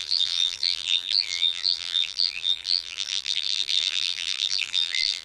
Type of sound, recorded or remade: remade